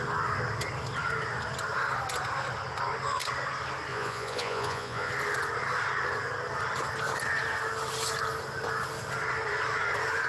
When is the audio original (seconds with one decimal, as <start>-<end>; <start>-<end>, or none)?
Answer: 0.0-3.9; 5.1-10.3